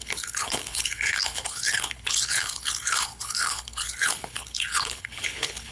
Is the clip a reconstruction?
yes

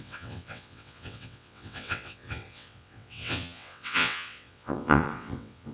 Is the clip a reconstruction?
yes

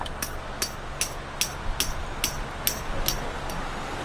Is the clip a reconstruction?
no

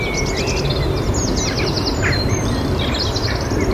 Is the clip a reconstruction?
no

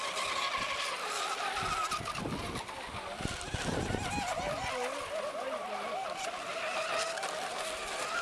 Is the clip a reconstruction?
no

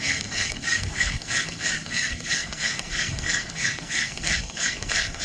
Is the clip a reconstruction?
yes